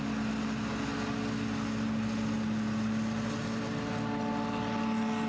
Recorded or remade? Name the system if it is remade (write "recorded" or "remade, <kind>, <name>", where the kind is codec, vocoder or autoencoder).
recorded